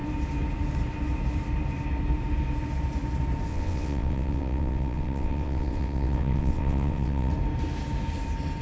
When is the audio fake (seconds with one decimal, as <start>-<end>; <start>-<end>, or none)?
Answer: 3.5-7.3